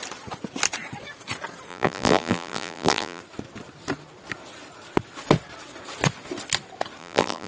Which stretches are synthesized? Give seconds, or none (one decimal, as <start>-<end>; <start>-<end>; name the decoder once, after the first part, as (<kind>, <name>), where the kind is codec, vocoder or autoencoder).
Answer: 1.7-3.2 (vocoder, BigVGAN v2); 7.0-7.5